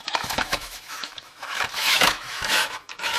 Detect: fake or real fake